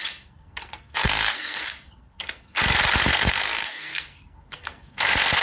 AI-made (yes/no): yes